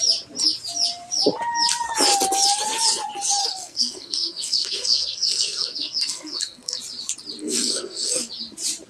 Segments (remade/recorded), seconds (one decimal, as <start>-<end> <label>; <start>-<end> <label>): 0.0-3.4 recorded; 3.4-6.8 remade; 6.8-7.4 recorded; 7.4-8.3 remade; 8.3-8.9 recorded